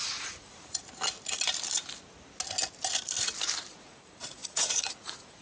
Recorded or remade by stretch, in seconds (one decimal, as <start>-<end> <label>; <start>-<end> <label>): 0.0-0.8 remade; 0.8-3.7 recorded; 3.7-5.4 remade